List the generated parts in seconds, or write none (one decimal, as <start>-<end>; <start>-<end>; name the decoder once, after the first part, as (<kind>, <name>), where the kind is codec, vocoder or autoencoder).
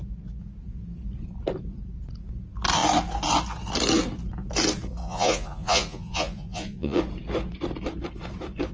5.0-7.0 (vocoder, Vocos)